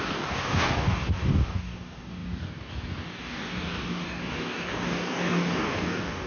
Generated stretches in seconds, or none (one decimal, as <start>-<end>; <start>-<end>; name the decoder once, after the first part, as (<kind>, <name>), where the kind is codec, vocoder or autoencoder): 0.0-6.3 (codec, DAC)